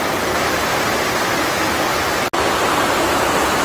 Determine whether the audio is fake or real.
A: real